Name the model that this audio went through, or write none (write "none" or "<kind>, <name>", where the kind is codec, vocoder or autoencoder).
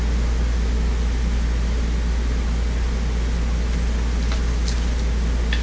none